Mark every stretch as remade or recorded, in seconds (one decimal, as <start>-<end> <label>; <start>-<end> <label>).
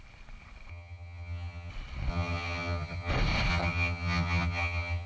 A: 0.0-0.7 recorded; 0.7-1.7 remade; 1.7-2.1 recorded; 2.1-3.1 remade; 3.1-3.5 recorded; 3.5-5.1 remade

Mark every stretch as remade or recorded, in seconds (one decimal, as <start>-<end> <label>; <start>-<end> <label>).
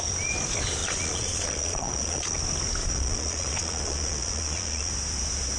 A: 0.0-0.8 recorded; 0.8-2.4 remade; 2.4-2.8 recorded; 2.8-4.9 remade; 4.9-5.6 recorded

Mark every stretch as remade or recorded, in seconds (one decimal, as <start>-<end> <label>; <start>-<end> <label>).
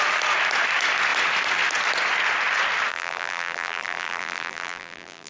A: 0.0-2.9 recorded; 2.9-5.3 remade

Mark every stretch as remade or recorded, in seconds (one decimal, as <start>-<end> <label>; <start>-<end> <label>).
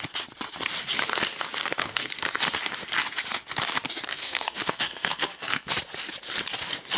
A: 0.0-1.6 recorded; 1.6-2.1 remade; 2.1-4.1 recorded; 4.1-5.7 remade; 5.7-7.0 recorded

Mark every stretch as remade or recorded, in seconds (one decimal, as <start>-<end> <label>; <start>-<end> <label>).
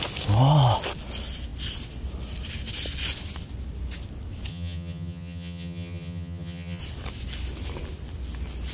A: 0.0-4.5 recorded; 4.5-6.8 remade; 6.8-8.7 recorded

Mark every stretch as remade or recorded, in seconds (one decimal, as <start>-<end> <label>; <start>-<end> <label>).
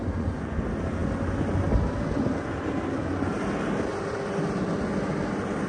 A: 0.0-0.6 remade; 0.6-5.7 recorded